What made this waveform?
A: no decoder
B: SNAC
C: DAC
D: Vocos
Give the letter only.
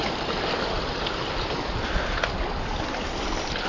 A